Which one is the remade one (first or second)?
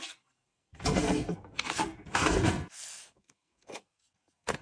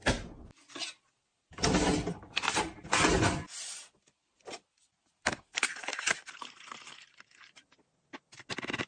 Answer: first